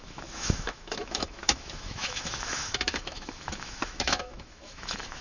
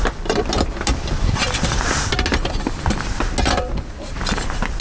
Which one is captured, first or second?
second